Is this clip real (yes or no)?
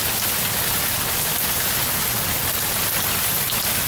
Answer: yes